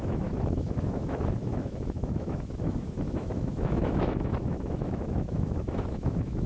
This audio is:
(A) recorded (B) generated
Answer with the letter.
B